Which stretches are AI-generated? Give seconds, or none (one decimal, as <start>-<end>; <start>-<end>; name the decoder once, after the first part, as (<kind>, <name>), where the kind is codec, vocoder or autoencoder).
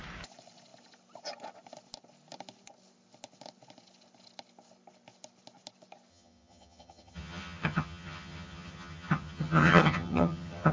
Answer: 6.1-10.7 (vocoder, HiFi-GAN)